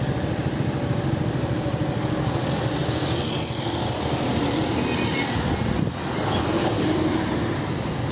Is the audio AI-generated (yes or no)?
no